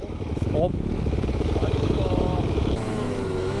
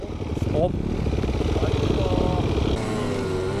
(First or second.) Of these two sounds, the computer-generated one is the first